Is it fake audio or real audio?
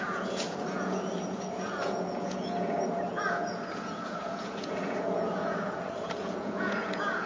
fake